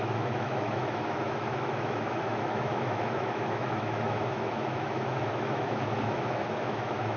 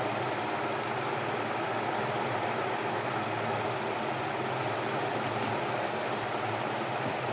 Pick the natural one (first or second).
second